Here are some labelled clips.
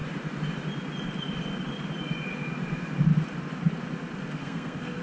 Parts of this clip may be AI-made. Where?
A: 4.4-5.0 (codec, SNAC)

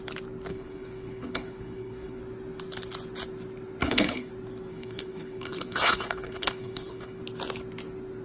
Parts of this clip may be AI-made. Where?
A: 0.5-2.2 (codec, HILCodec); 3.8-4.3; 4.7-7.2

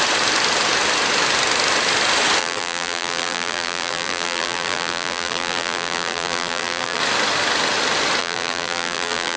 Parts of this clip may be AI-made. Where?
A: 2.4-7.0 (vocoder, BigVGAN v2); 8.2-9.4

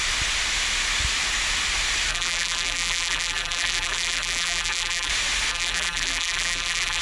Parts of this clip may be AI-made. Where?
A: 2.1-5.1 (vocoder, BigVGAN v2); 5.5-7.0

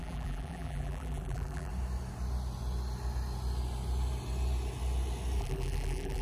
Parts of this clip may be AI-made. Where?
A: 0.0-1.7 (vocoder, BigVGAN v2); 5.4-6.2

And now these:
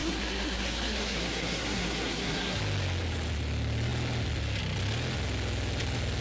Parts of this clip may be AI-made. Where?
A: 0.0-2.6 (codec, SNAC)